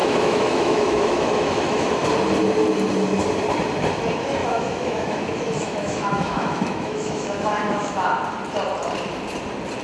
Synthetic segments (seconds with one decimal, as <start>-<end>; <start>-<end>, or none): 0.0-2.0; 4.4-8.2